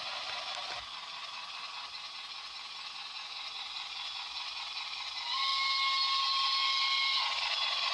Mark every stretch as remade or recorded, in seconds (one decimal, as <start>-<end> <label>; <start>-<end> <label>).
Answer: 0.0-7.9 recorded